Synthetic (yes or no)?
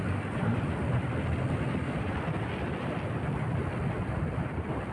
yes